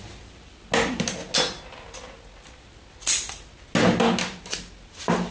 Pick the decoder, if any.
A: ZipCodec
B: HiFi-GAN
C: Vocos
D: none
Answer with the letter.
D